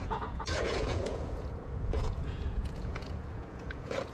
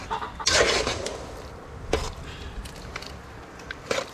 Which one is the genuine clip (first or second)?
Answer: second